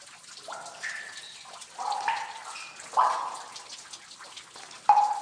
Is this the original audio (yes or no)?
yes